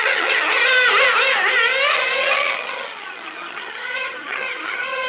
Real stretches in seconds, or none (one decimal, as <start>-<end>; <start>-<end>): 0.6-1.9